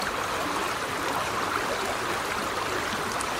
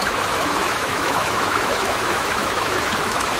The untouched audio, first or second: first